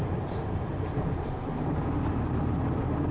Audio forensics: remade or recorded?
remade